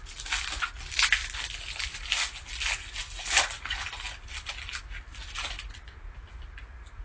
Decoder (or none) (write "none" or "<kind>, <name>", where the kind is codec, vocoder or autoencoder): none